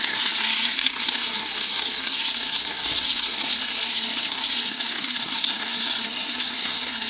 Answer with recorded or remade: remade